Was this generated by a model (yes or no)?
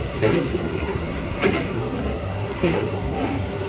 yes